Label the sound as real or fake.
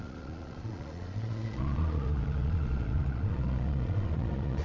fake